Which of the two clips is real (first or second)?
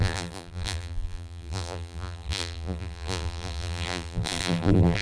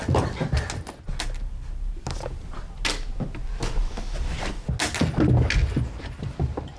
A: second